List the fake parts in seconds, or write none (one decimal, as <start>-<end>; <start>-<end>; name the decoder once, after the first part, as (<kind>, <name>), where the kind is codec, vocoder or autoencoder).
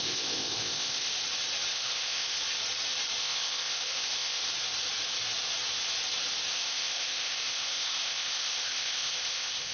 0.0-1.1 (codec, ZipCodec); 1.7-2.4; 3.2-4.4; 6.5-9.7